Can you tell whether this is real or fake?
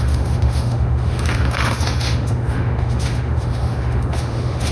fake